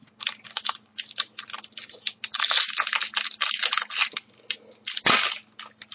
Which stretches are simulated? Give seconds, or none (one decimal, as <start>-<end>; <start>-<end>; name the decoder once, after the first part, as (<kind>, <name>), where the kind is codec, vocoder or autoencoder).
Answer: none